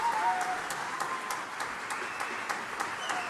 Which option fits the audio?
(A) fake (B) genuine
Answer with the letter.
B